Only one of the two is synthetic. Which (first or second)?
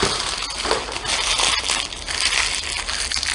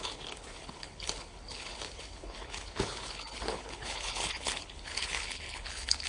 second